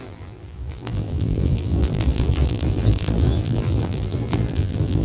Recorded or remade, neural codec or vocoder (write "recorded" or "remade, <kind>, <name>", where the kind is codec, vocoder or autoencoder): remade, vocoder, BigVGAN v2